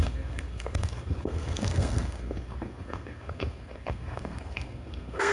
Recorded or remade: remade